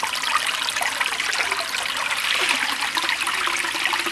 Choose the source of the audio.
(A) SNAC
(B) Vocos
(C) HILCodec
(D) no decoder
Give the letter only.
D